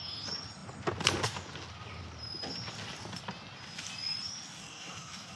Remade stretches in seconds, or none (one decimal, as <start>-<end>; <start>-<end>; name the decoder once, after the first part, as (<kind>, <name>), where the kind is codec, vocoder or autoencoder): 4.6-5.4 (codec, SNAC)